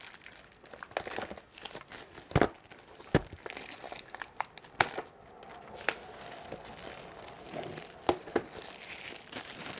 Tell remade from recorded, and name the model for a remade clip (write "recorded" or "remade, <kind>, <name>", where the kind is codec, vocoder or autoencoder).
recorded